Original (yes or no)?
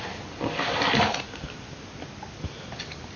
yes